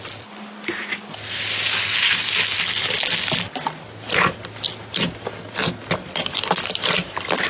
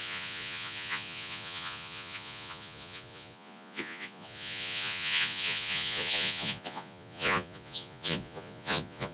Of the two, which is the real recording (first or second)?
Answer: first